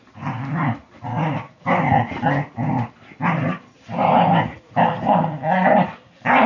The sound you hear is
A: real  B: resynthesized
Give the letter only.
A